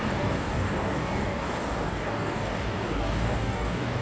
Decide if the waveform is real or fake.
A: fake